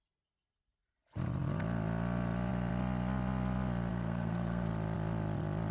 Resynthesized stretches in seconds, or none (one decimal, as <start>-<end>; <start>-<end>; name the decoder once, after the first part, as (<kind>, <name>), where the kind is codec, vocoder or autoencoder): 3.9-4.7 (codec, SNAC)